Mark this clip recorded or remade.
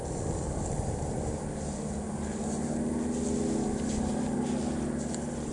recorded